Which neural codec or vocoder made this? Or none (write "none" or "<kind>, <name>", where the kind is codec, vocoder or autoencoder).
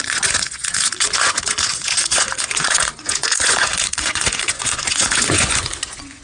vocoder, Vocos